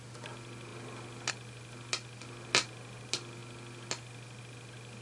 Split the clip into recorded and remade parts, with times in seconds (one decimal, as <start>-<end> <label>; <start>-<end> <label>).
0.0-5.0 recorded